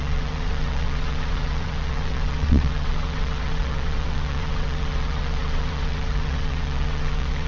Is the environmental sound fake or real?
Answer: fake